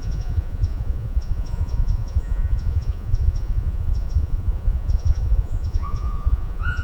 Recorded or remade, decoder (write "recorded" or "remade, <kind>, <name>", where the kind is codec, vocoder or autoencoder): remade, vocoder, Vocos